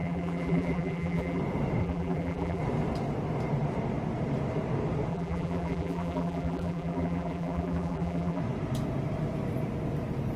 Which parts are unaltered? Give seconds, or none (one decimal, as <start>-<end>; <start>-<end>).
1.4-1.8; 2.6-5.1; 8.4-10.4